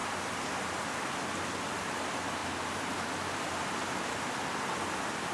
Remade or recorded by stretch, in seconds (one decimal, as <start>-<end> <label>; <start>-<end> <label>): 0.0-2.4 recorded; 2.4-3.5 remade; 3.5-5.3 recorded